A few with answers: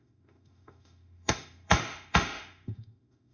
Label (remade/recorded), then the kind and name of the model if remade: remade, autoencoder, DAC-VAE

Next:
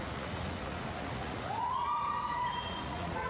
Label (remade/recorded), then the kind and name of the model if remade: remade, vocoder, Vocos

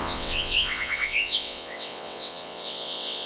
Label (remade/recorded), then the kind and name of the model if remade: remade, vocoder, WaveNeXt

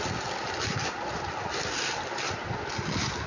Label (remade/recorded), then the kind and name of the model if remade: recorded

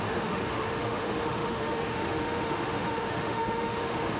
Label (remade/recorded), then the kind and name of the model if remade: remade, autoencoder, DAC-VAE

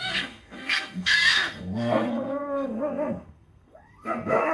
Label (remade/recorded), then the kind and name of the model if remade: remade, codec, SNAC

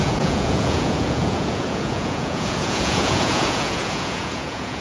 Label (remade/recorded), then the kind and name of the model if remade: remade, vocoder, Vocos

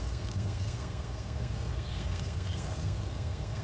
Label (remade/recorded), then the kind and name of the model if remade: remade, codec, SNAC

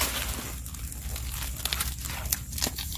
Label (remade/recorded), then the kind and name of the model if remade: recorded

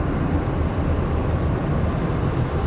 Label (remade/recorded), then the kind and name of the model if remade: remade, vocoder, BigVGAN v2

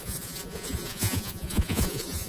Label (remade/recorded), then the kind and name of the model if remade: remade, vocoder, Vocos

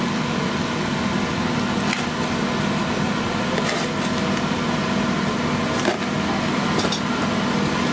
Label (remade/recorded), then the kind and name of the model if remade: recorded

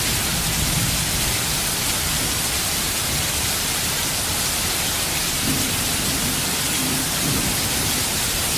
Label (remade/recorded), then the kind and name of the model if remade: recorded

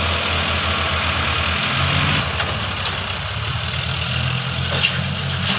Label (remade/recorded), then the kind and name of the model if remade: recorded